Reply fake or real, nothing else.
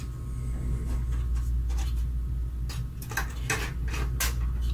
real